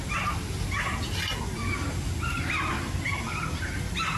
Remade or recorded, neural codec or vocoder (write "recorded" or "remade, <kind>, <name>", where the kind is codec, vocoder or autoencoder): recorded